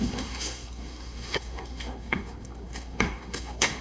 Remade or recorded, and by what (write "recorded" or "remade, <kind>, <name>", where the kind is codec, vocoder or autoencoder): remade, codec, SNAC